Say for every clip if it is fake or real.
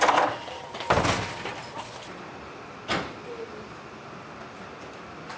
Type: real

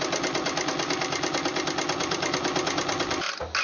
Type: real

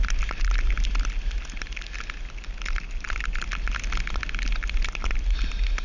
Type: real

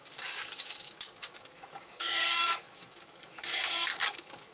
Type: fake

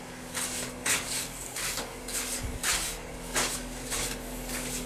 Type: fake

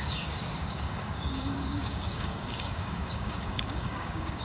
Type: fake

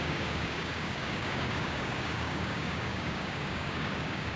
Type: fake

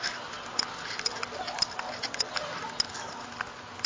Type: real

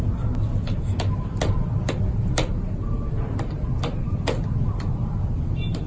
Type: real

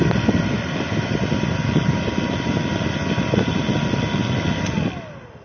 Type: real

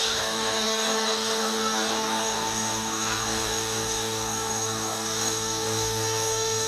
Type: fake